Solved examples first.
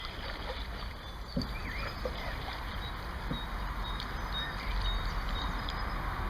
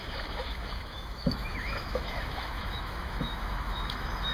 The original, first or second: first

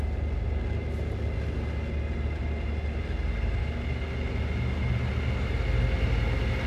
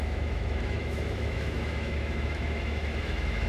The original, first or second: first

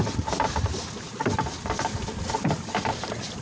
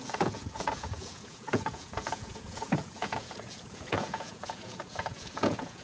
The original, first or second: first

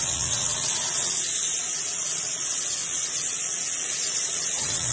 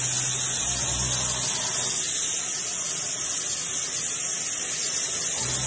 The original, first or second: second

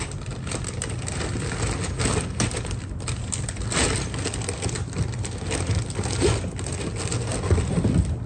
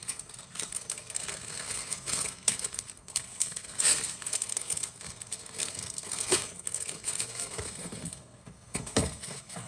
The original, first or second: first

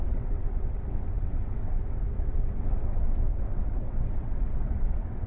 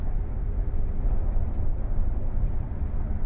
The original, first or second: second